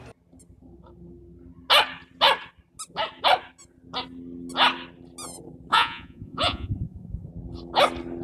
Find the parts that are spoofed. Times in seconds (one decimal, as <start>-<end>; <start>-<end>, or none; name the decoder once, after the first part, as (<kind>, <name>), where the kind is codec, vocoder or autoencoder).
5.7-7.3 (vocoder, Vocos)